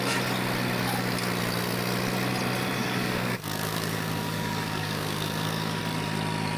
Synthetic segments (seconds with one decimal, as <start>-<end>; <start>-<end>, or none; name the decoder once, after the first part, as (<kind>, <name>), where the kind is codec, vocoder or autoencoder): 2.8-5.8 (codec, DAC)